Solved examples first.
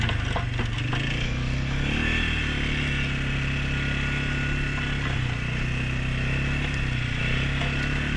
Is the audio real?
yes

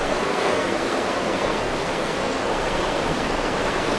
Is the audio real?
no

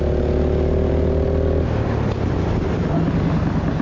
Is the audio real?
yes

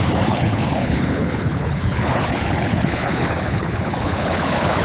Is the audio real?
no